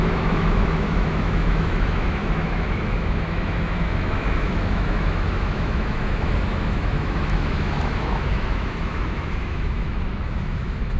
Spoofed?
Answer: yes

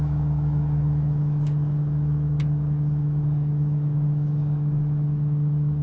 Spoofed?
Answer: yes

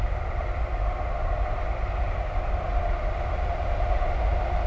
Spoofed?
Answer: no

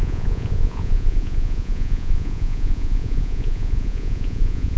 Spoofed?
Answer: yes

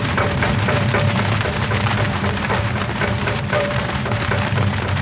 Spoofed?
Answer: yes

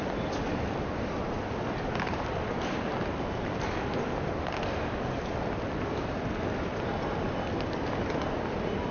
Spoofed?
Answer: no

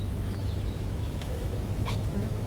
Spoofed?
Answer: yes